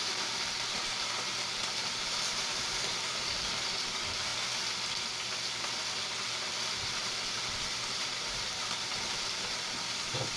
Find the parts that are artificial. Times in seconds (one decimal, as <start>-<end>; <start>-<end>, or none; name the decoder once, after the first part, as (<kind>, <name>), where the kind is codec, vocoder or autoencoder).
0.0-4.3 (vocoder, BigVGAN v2); 6.8-10.4